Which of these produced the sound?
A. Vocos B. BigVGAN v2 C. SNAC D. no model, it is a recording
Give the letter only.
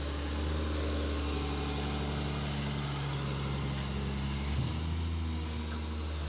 D